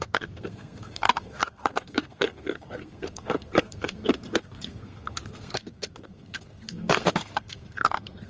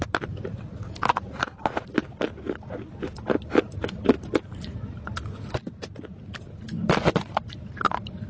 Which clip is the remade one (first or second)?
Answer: first